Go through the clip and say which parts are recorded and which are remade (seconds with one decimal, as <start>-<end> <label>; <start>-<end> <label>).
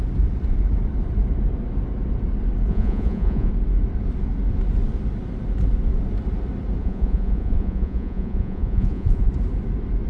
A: 0.0-2.7 recorded; 2.7-3.5 remade; 3.5-6.8 recorded; 6.8-9.3 remade; 9.3-10.1 recorded